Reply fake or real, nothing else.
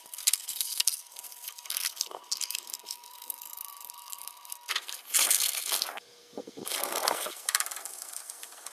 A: fake